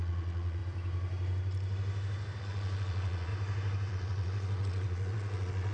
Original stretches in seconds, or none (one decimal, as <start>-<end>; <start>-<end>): 0.6-2.4; 3.3-3.9